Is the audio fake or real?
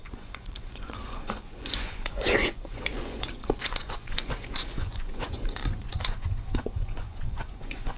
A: fake